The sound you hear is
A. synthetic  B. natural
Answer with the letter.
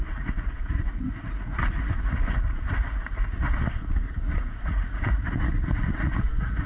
A